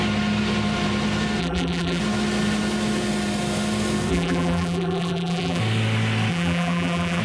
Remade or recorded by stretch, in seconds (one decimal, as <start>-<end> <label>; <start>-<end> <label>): 0.0-1.4 recorded; 1.4-2.0 remade; 2.0-4.1 recorded; 4.1-5.6 remade; 5.6-6.3 recorded; 6.3-7.2 remade